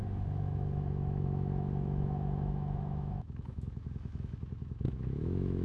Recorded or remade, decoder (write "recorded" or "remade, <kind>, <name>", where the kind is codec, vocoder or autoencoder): remade, autoencoder, DAC-VAE